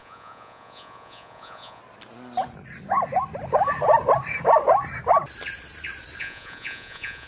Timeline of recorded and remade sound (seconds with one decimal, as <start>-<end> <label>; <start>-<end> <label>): 0.0-1.8 remade; 1.8-6.2 recorded; 6.2-7.3 remade